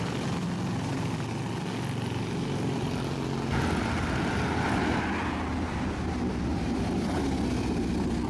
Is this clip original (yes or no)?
yes